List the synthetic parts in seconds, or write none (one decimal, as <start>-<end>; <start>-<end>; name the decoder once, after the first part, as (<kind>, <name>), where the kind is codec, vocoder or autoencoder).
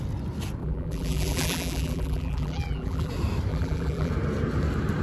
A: 0.6-3.1 (vocoder, BigVGAN v2); 3.5-4.1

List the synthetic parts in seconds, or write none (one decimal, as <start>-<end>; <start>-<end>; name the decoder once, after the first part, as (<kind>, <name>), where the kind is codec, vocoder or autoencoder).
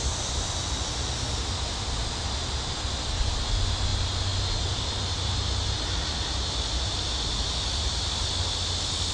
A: none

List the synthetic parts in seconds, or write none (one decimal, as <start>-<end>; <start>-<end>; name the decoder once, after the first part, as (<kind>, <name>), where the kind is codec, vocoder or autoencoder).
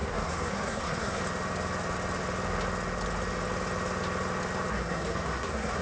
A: 0.0-1.2 (codec, SNAC); 4.7-5.8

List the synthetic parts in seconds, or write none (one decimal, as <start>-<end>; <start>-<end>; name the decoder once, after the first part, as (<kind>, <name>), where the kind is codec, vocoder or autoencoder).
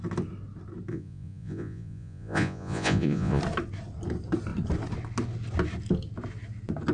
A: 0.9-3.4 (vocoder, Vocos)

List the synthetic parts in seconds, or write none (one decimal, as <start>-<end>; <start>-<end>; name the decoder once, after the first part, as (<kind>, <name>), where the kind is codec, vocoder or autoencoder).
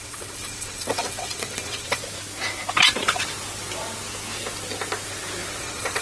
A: 0.0-2.0 (vocoder, WaveNeXt); 5.6-6.0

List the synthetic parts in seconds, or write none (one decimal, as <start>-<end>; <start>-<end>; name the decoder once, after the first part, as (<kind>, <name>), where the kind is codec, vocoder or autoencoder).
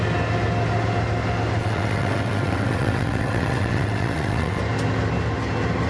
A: 1.6-4.6 (vocoder, WaveNeXt)